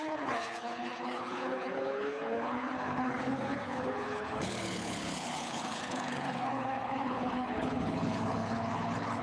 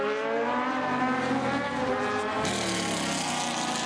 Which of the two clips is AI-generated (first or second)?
first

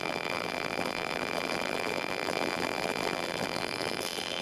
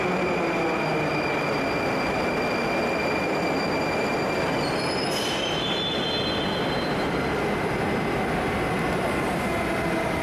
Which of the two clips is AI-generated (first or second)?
first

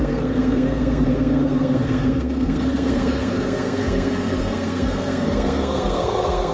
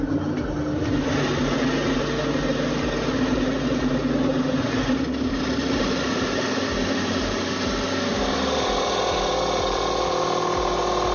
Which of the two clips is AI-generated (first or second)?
first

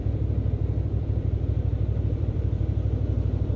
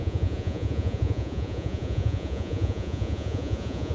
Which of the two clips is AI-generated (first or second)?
second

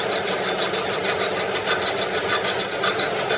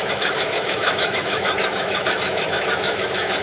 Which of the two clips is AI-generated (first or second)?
second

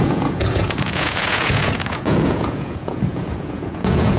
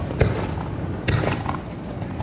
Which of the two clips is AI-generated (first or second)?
first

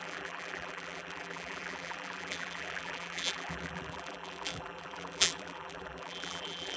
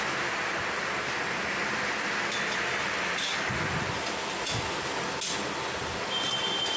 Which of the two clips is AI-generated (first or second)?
first